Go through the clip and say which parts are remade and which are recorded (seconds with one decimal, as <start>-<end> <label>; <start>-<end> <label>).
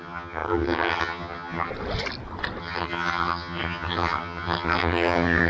0.0-1.7 remade; 1.7-2.6 recorded; 2.6-5.5 remade